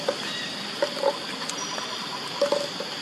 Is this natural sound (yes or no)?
no